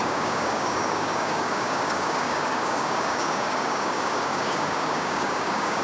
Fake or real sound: fake